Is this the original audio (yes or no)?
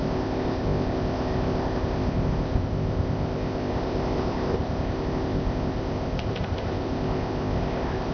no